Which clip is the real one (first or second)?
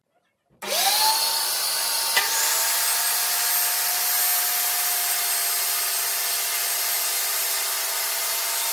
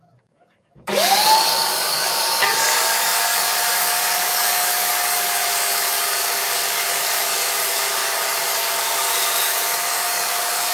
first